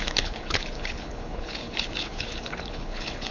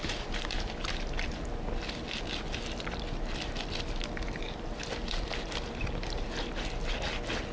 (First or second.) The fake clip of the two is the first